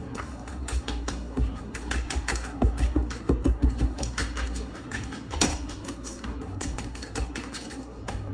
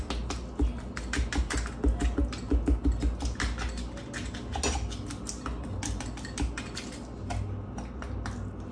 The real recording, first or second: second